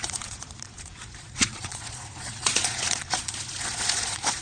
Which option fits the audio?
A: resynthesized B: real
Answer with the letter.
A